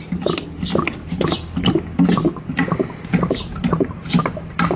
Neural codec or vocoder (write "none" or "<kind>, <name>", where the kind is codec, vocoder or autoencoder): none